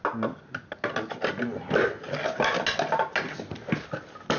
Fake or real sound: real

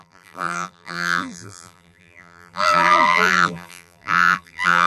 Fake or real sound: fake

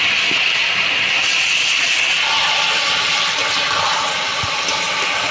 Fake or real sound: real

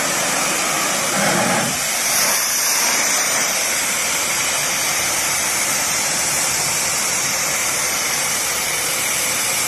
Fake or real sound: fake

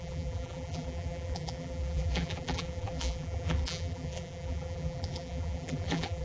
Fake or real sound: fake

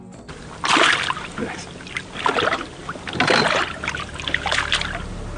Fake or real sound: real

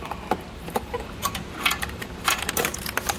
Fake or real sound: fake